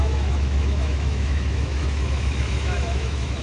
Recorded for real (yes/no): no